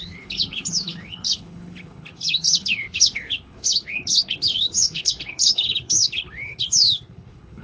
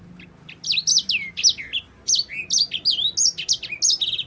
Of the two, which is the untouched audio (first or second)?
second